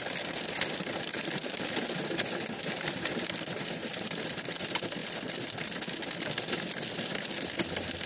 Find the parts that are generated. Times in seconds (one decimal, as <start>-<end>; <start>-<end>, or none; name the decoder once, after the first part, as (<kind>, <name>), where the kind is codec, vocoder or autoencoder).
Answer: none